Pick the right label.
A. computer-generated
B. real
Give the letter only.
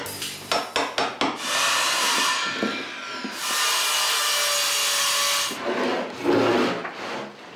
B